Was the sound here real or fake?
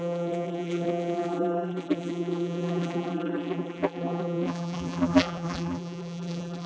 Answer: fake